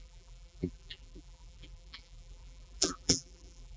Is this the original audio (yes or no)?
no